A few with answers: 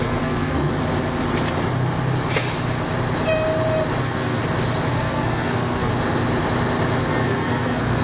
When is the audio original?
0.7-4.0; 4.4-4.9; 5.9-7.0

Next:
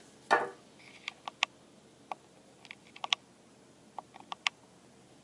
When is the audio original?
0.0-5.2